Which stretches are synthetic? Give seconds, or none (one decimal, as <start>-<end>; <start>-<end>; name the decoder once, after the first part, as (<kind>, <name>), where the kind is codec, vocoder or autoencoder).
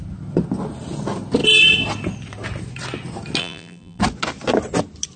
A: 3.4-4.0 (vocoder, BigVGAN v2)